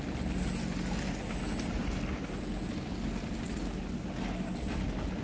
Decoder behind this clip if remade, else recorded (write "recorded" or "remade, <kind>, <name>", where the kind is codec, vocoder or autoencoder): recorded